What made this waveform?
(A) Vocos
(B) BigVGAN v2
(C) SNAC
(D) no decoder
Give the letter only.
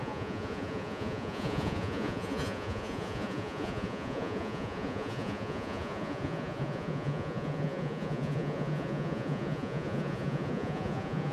A